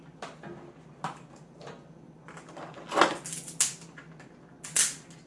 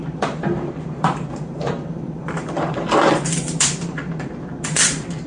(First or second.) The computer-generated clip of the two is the second